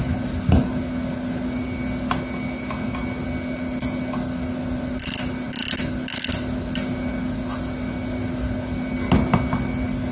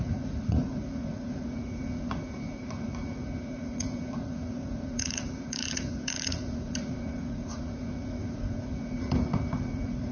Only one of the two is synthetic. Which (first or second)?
second